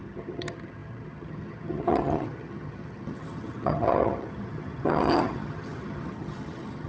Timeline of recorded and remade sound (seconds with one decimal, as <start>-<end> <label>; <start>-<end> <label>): 0.0-6.9 remade